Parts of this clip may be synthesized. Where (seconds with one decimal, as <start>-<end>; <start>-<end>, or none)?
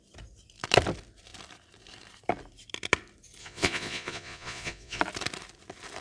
3.4-5.0